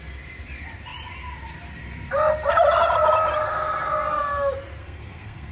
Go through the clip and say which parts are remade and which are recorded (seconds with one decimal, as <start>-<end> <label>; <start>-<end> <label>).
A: 0.0-4.8 recorded; 4.8-5.5 remade